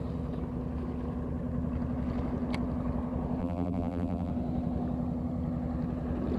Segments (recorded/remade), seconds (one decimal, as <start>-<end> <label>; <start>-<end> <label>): 0.0-3.4 recorded; 3.4-4.3 remade; 4.3-6.4 recorded